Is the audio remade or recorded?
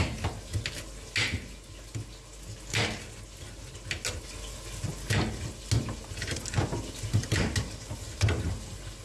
recorded